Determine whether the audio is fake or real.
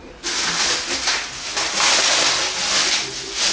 real